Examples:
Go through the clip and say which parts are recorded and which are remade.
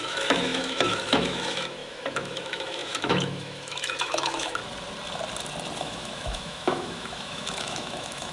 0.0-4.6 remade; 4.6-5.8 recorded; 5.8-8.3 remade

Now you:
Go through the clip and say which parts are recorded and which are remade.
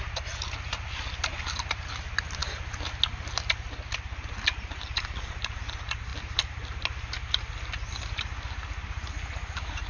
0.0-9.9 recorded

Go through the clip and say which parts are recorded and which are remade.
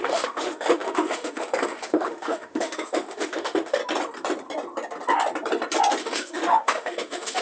0.0-3.8 remade; 3.8-6.0 recorded; 6.0-7.4 remade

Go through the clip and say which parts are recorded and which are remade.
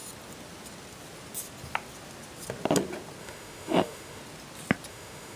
0.0-3.2 recorded; 3.2-4.2 remade; 4.2-4.9 recorded; 4.9-5.4 remade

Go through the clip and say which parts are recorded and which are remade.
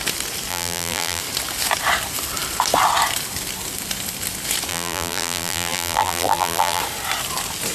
0.0-0.5 recorded; 0.5-1.2 remade; 1.2-4.7 recorded; 4.7-6.8 remade; 6.8-7.7 recorded